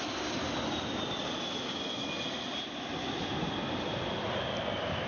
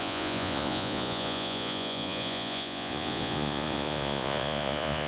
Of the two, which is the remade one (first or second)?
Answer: second